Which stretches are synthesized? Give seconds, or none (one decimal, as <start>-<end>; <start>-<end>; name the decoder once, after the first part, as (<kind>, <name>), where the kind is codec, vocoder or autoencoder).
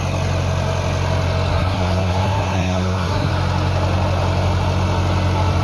1.5-3.3 (codec, SNAC)